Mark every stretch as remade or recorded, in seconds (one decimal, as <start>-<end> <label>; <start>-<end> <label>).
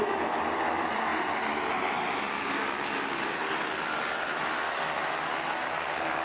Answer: 0.0-6.2 recorded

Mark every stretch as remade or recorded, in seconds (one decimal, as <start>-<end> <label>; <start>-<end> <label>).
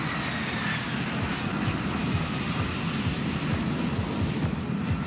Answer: 0.0-5.1 recorded